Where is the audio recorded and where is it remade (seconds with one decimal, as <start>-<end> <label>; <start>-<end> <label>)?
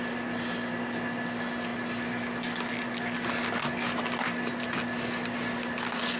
0.0-6.2 recorded